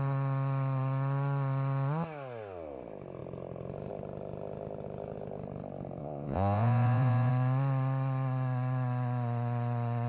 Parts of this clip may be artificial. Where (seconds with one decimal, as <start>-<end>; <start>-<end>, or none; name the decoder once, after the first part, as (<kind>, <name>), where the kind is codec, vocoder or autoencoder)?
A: 6.0-7.3 (vocoder, Vocos)